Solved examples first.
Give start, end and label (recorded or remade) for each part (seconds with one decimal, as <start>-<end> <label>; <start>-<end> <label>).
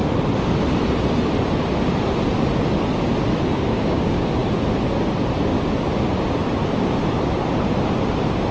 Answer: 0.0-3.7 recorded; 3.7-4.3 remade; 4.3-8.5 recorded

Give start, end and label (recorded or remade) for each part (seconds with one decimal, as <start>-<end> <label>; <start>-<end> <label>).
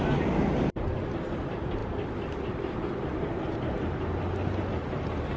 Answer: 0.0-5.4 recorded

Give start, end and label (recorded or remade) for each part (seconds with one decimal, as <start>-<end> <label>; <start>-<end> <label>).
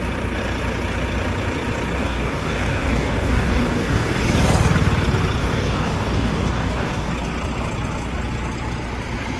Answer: 0.0-2.0 recorded; 2.0-4.2 remade; 4.2-5.4 recorded; 5.4-7.1 remade; 7.1-9.4 recorded